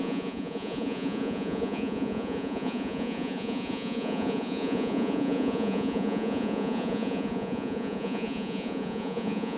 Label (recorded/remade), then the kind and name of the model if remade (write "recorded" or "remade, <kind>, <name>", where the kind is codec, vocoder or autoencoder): remade, vocoder, Vocos